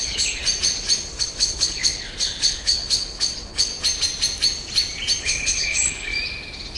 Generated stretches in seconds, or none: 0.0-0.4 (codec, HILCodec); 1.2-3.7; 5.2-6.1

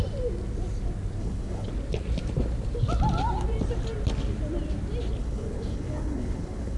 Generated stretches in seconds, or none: 1.2-1.7 (codec, HILCodec); 5.2-6.8

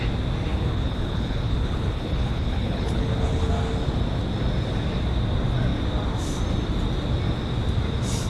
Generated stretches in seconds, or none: 0.5-3.5 (codec, HILCodec)